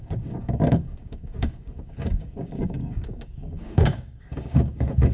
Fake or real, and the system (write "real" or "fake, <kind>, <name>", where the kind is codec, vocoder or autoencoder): fake, codec, DAC